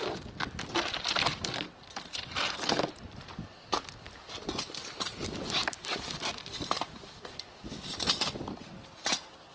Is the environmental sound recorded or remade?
recorded